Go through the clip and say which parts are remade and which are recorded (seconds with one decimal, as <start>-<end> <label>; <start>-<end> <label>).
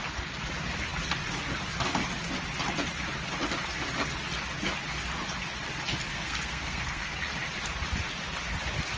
0.0-6.1 recorded; 6.1-7.1 remade; 7.1-9.0 recorded